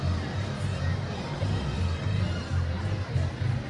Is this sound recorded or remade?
recorded